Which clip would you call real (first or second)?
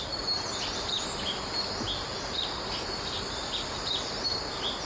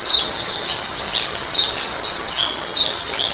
first